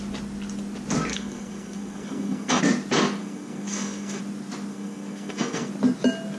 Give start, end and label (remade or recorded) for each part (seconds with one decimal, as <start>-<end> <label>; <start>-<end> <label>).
0.0-1.1 recorded; 1.1-2.6 remade; 2.6-3.2 recorded; 3.2-4.2 remade; 4.2-4.7 recorded; 4.7-5.7 remade; 5.7-6.4 recorded

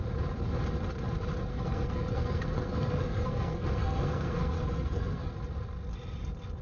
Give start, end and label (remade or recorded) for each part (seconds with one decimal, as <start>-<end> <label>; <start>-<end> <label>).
0.0-1.5 recorded; 1.5-5.3 remade; 5.3-6.6 recorded

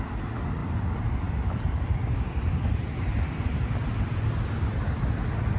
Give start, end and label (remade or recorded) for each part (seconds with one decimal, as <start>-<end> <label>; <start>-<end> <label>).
0.0-5.6 recorded

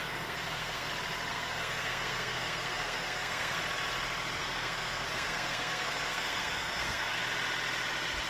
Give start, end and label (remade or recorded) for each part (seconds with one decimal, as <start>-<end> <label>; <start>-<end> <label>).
0.0-0.9 remade; 0.9-1.3 recorded; 1.3-3.6 remade; 3.6-4.4 recorded; 4.4-7.2 remade; 7.2-8.3 recorded

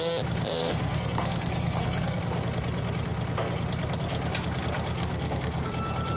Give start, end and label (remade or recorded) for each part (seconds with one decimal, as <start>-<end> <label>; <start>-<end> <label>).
0.0-0.6 recorded; 0.6-2.2 remade; 2.2-5.0 recorded; 5.0-5.7 remade; 5.7-6.2 recorded

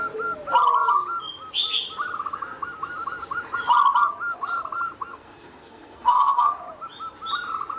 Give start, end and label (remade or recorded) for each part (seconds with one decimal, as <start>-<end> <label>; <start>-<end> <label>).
0.0-5.1 recorded; 5.1-6.5 remade; 6.5-7.8 recorded

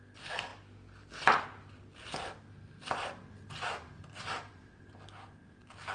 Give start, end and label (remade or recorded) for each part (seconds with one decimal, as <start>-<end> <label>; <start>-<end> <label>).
0.0-5.9 recorded